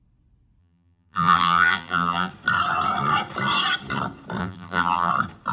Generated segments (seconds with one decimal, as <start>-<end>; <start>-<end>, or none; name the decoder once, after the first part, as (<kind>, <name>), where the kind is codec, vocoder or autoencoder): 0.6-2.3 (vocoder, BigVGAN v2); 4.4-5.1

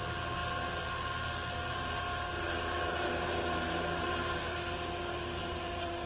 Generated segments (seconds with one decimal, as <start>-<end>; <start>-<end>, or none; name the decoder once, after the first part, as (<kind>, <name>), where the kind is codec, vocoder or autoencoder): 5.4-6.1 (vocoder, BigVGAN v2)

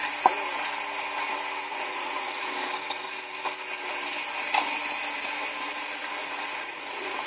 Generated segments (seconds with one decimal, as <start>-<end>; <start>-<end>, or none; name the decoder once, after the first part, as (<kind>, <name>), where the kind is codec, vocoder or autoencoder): 1.7-2.5 (vocoder, Vocos); 6.2-7.3

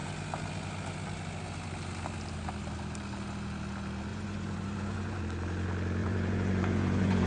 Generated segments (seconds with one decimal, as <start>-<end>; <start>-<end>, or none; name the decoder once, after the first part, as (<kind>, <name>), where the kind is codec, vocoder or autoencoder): 4.1-5.2 (vocoder, Vocos); 6.0-7.3

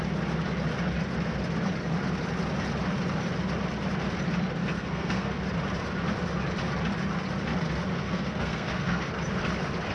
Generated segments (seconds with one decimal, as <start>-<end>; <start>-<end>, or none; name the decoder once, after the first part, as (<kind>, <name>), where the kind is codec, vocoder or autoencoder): 4.6-5.4 (codec, SNAC); 7.9-9.1

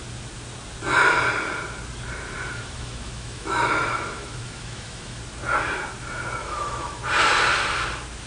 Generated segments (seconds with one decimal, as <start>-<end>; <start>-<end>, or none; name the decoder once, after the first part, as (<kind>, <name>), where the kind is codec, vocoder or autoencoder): 2.4-5.2 (autoencoder, DAC-VAE); 6.4-7.0